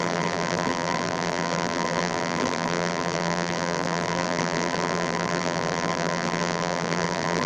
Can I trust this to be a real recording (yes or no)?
no